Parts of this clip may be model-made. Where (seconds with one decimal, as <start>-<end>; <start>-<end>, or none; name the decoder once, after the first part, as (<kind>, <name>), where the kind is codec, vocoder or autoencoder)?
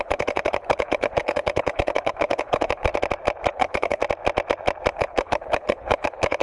0.0-2.9 (codec, HILCodec); 3.5-4.0; 4.9-6.4